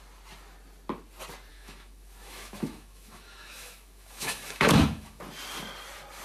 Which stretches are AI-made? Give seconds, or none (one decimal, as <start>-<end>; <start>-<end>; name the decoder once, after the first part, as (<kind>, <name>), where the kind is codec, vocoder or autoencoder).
1.5-5.2 (autoencoder, DAC-VAE)